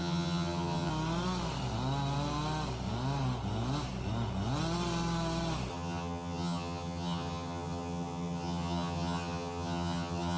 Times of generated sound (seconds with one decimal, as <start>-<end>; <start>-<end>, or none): 0.0-0.9; 5.7-10.4